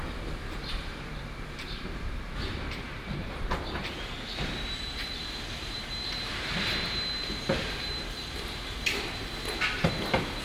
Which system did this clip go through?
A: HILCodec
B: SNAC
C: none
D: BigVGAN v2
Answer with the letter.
D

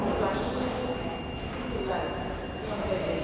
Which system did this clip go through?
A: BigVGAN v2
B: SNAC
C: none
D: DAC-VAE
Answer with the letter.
C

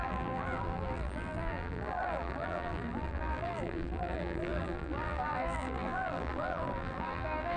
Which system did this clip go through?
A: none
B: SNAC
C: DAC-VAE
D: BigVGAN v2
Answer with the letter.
D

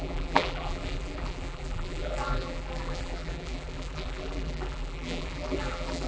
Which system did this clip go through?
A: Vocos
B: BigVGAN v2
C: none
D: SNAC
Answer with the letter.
B